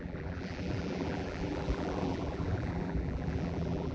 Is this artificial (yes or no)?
yes